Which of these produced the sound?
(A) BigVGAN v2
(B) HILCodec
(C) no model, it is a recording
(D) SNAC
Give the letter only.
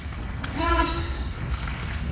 D